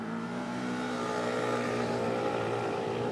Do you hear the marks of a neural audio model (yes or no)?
yes